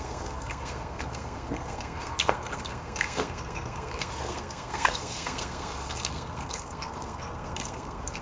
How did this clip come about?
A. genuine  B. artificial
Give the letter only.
B